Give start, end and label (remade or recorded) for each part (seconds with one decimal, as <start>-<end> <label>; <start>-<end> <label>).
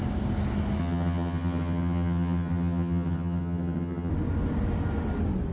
0.0-0.8 recorded; 0.8-4.1 remade; 4.1-5.5 recorded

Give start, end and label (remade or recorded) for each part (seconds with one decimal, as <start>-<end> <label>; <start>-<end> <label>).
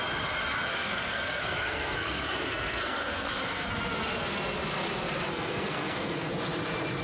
0.0-0.7 recorded; 0.7-3.7 remade; 3.7-5.3 recorded; 5.3-6.3 remade; 6.3-7.0 recorded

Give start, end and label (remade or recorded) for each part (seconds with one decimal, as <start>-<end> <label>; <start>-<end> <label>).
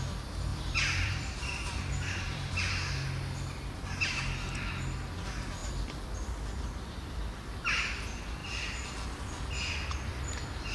0.0-0.5 recorded; 0.5-2.7 remade; 2.7-10.7 recorded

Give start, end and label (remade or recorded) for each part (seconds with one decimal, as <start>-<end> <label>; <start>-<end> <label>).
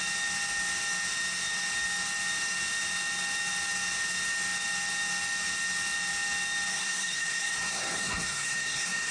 0.0-6.7 recorded; 6.7-9.1 remade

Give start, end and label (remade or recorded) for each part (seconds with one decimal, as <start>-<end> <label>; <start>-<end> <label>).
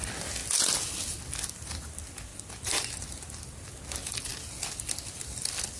0.0-5.8 recorded